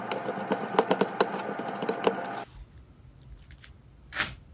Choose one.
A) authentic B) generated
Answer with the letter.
A